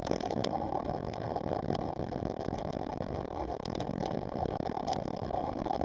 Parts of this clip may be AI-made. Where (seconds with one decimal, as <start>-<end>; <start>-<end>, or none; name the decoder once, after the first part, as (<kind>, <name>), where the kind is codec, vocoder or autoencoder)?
0.0-5.8 (autoencoder, DAC-VAE)